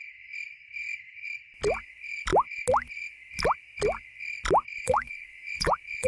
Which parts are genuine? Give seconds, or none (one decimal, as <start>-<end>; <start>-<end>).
0.0-4.7

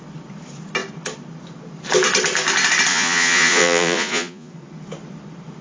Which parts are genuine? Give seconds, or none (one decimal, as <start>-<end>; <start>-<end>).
0.0-2.9; 4.5-5.6